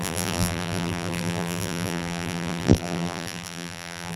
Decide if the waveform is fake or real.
fake